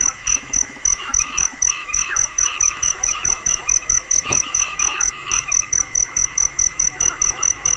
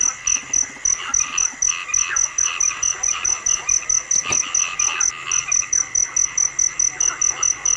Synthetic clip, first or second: first